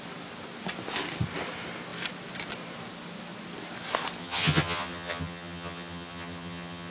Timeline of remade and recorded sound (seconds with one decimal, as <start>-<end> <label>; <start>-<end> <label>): 0.0-4.2 recorded; 4.2-6.9 remade